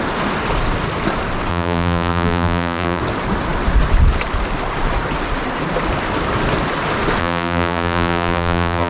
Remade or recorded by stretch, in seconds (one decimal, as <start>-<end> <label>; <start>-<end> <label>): 0.0-1.5 recorded; 1.5-3.0 remade; 3.0-7.2 recorded; 7.2-8.9 remade

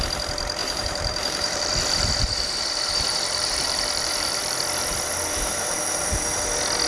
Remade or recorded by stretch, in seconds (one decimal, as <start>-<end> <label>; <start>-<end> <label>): 0.0-0.6 recorded; 0.6-4.6 remade; 4.6-5.5 recorded; 5.5-6.4 remade; 6.4-6.9 recorded